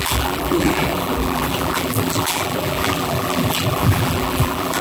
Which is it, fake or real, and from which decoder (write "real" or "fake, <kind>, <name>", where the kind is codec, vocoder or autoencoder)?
fake, vocoder, BigVGAN v2